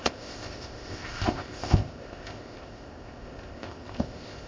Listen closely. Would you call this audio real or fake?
fake